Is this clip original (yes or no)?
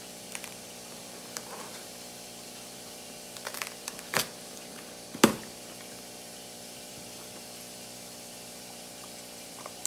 no